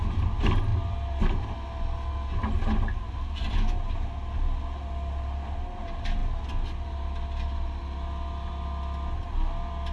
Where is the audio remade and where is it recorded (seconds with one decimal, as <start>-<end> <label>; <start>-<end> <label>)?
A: 0.0-9.9 recorded